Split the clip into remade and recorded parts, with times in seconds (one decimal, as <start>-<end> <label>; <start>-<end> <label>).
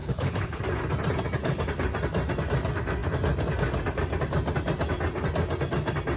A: 0.0-0.6 remade; 0.6-6.2 recorded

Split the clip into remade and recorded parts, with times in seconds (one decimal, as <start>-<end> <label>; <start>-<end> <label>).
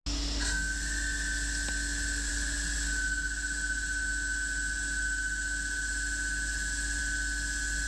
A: 0.0-7.9 recorded